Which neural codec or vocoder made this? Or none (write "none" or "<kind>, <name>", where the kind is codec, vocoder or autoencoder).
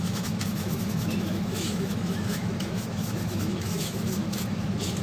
autoencoder, DAC-VAE